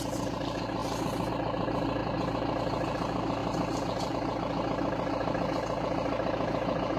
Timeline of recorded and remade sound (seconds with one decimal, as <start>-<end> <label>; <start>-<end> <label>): 0.0-7.0 recorded